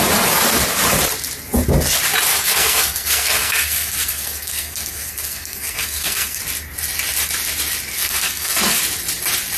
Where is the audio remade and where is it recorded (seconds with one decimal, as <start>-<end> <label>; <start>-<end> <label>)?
0.0-2.3 recorded; 2.3-6.4 remade; 6.4-7.9 recorded; 7.9-8.8 remade; 8.8-9.6 recorded